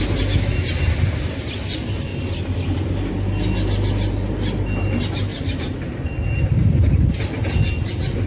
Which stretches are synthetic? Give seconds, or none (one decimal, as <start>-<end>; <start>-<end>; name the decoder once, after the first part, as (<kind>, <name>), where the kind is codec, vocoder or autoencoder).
none